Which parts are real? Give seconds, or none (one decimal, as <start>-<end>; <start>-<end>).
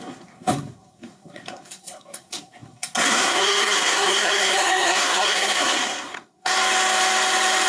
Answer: 6.5-7.7